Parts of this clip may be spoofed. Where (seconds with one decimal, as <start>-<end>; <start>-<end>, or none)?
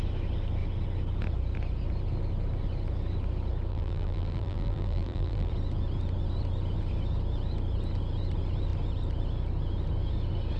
3.7-5.5